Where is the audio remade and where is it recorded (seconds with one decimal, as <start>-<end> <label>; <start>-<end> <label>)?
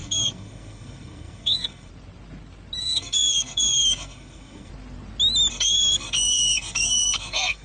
0.0-1.9 remade; 1.9-2.8 recorded; 2.8-4.7 remade; 4.7-5.5 recorded; 5.5-7.6 remade